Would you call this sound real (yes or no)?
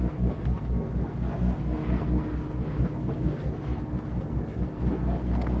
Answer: no